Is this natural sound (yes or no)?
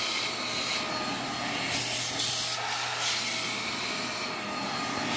yes